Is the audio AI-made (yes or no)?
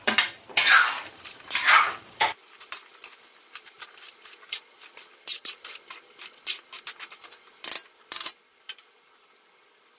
yes